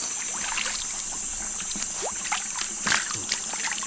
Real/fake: real